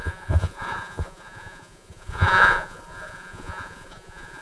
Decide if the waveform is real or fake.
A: fake